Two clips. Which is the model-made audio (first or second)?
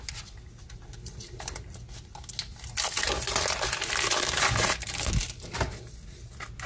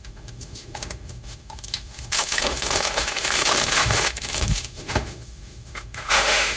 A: second